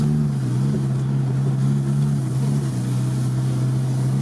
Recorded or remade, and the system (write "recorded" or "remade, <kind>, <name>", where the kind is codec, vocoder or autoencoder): recorded